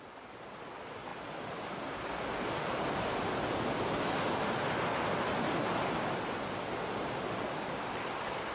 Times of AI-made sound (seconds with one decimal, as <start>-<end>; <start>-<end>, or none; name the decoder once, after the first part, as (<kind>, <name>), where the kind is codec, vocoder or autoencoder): none

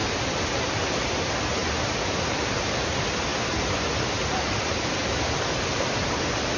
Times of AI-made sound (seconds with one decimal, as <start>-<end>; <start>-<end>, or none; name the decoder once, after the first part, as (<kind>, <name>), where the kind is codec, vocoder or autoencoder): none

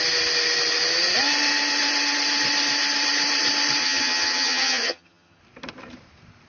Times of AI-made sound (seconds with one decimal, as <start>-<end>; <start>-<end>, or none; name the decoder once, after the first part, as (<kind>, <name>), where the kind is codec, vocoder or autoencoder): 3.8-5.4 (vocoder, HiFi-GAN)

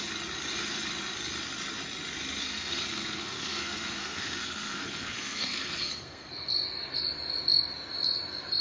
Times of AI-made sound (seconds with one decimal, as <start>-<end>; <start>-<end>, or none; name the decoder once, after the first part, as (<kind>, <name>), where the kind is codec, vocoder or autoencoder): 2.4-6.3 (codec, SNAC)